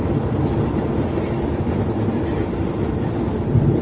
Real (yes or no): yes